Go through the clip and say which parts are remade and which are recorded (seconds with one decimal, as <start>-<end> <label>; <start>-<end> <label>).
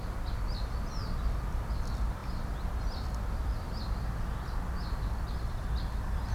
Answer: 0.0-6.3 recorded